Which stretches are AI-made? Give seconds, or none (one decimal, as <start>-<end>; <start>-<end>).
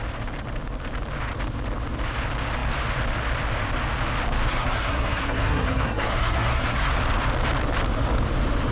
4.5-6.9